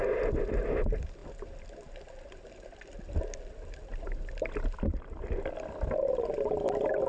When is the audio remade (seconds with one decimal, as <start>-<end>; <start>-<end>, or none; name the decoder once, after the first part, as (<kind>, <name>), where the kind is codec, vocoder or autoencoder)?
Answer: none